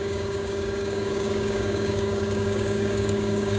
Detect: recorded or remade remade